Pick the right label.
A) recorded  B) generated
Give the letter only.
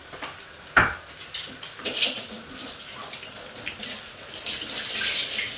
A